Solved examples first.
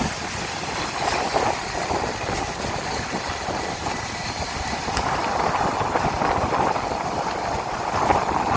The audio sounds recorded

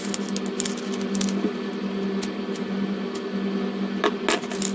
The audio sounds recorded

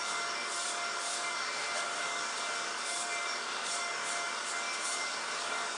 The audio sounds remade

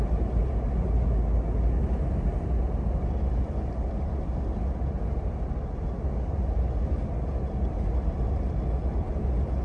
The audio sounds recorded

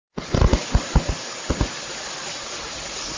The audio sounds recorded